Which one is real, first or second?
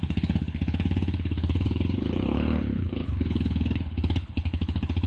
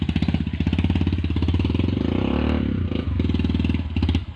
second